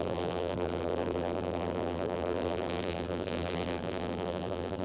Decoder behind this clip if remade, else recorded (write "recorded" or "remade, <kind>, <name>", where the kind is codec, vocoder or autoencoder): remade, vocoder, BigVGAN v2